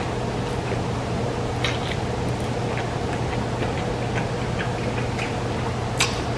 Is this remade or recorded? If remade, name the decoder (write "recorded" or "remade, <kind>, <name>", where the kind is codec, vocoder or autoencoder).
recorded